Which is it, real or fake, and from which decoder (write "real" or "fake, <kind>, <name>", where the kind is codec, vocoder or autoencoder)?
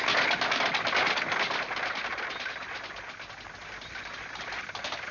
real